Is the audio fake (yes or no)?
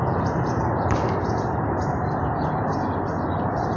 no